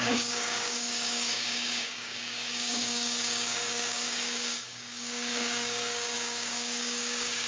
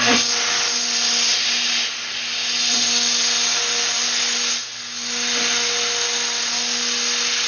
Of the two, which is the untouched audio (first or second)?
second